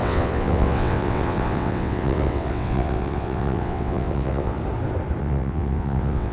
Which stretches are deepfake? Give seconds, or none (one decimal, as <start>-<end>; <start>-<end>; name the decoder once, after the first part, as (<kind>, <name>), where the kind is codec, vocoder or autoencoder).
0.0-4.6 (vocoder, WaveNeXt); 5.2-6.3